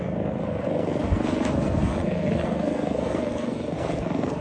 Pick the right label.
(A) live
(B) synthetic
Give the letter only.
B